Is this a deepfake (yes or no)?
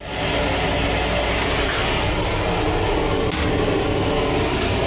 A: no